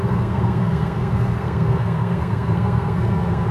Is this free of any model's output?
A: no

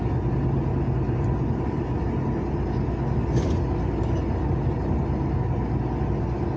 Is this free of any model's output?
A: yes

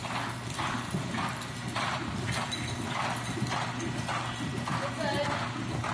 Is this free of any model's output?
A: yes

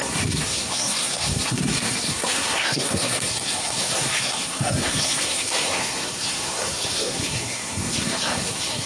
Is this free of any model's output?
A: no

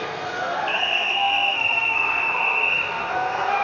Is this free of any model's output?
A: no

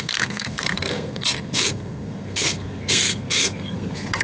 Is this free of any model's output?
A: no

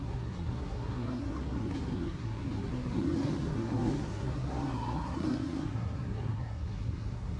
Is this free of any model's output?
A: no